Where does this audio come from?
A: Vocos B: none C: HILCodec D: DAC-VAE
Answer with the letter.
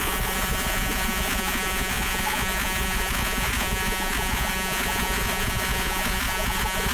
A